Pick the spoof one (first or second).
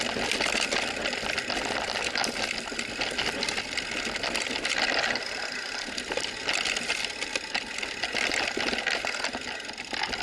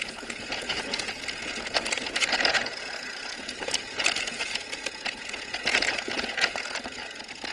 second